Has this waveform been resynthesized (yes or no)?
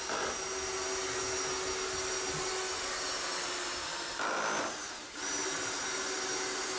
no